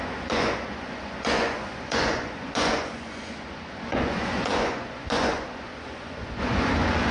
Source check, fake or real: fake